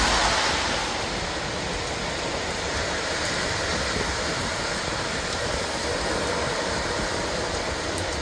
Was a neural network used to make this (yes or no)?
no